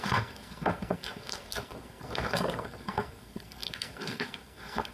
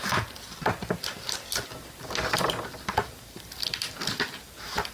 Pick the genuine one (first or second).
second